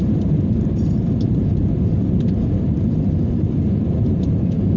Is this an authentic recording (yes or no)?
no